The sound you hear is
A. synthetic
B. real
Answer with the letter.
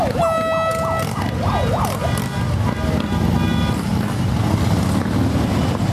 B